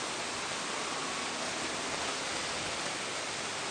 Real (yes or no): yes